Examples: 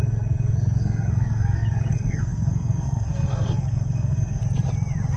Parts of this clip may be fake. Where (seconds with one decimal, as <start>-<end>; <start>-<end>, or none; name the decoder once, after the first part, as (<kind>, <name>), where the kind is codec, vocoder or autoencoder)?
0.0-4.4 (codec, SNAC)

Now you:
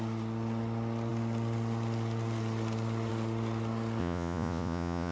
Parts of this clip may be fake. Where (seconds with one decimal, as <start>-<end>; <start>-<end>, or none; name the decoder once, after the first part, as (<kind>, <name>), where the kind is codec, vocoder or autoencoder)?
4.0-5.1 (vocoder, Vocos)

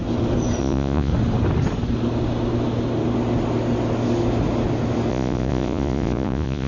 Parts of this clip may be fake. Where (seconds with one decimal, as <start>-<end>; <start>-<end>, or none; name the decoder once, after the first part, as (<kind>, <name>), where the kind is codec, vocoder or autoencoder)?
0.6-1.1 (vocoder, Vocos); 5.1-6.7